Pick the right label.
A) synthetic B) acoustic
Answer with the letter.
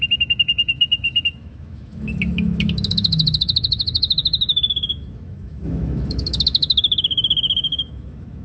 A